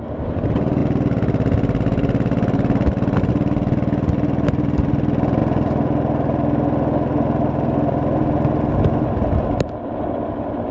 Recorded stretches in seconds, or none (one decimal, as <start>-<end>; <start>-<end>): 0.0-10.7